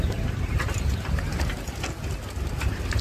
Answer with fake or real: real